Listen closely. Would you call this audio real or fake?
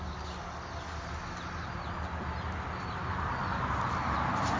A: real